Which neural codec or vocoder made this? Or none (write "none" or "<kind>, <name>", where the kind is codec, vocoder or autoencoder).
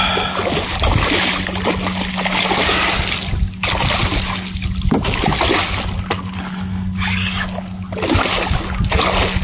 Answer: none